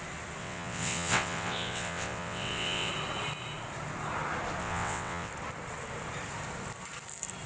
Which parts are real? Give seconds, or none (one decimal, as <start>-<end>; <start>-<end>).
0.0-0.4; 2.9-4.6; 5.3-7.5